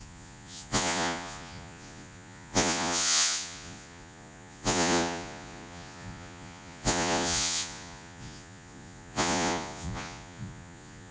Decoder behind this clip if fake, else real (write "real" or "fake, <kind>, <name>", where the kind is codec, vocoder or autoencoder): fake, vocoder, Vocos